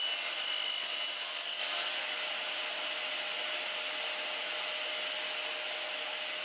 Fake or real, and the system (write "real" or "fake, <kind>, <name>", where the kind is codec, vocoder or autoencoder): real